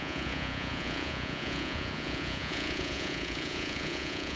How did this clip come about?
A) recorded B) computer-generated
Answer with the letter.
B